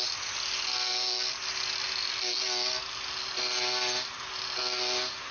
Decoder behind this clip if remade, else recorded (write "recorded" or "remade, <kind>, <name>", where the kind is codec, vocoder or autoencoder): recorded